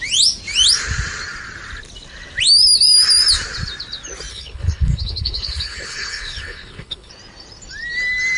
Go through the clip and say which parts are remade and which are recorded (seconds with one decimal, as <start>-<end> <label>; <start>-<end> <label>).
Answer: 0.0-4.3 recorded; 4.3-7.1 remade; 7.1-8.4 recorded